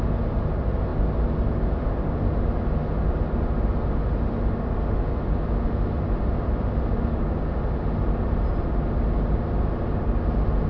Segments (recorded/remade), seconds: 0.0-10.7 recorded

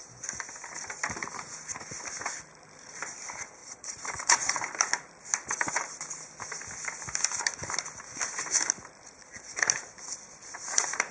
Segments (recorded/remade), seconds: 0.0-3.6 recorded; 3.6-4.6 remade; 4.6-11.1 recorded

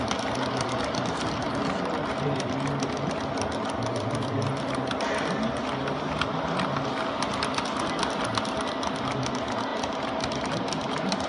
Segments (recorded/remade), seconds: 0.0-11.3 recorded

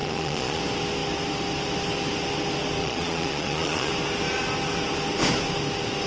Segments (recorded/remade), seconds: 0.0-0.6 remade; 0.6-2.8 recorded; 2.8-3.9 remade; 3.9-6.1 recorded

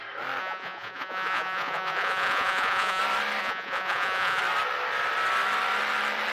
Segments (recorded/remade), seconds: 0.0-0.4 recorded; 0.4-3.0 remade; 3.0-3.4 recorded; 3.4-4.4 remade; 4.4-6.3 recorded

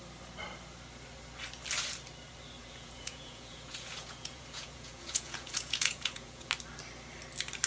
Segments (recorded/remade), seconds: 0.0-2.6 recorded; 2.6-6.5 remade; 6.5-7.7 recorded